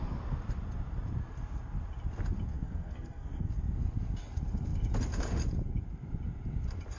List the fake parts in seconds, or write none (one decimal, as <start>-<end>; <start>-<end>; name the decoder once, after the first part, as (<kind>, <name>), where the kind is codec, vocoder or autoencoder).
2.5-3.5 (codec, SNAC)